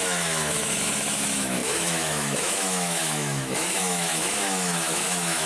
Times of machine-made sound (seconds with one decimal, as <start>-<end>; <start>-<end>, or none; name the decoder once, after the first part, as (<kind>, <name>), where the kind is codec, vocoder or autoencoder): 0.0-5.5 (autoencoder, DAC-VAE)